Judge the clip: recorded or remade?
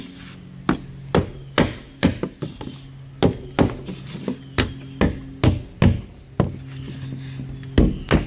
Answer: recorded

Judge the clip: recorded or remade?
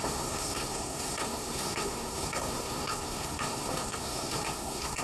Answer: remade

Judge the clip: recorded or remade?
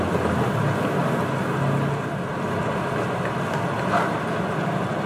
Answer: recorded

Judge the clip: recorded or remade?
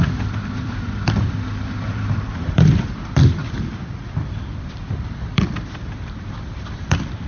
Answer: remade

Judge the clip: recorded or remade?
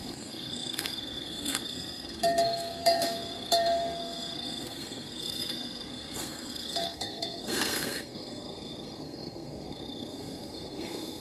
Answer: remade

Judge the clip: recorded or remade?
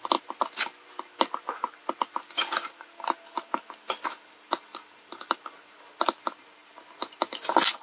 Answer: recorded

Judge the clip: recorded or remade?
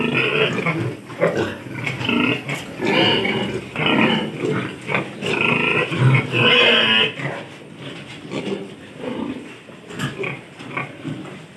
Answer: recorded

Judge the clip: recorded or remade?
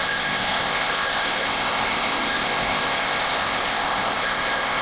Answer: remade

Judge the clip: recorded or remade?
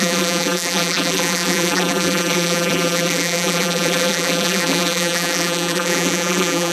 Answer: remade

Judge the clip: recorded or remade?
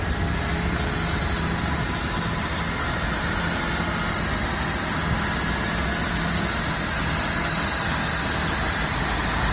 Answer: recorded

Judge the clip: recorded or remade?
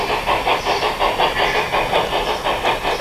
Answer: recorded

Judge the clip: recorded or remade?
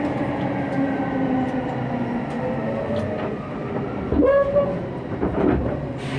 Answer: recorded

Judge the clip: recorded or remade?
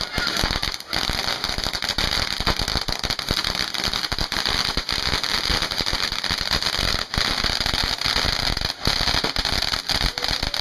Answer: recorded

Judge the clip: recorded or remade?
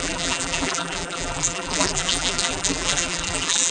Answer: remade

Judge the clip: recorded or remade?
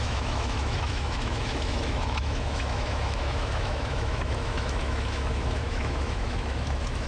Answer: remade